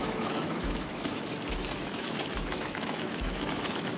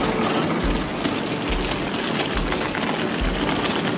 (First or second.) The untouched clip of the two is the second